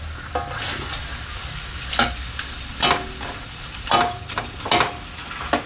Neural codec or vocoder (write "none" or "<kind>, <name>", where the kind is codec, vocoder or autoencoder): none